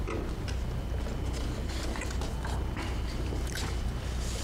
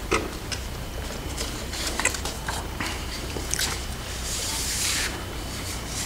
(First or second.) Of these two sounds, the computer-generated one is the second